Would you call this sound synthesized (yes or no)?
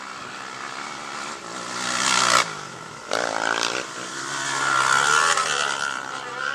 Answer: no